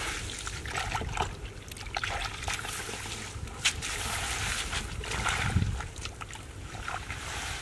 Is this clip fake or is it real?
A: real